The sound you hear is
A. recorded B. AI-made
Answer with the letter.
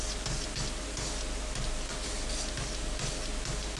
A